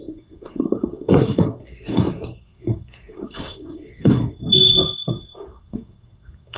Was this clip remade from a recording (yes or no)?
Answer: yes